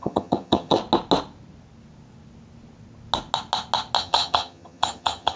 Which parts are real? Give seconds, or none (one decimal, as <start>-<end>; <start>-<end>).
0.8-4.0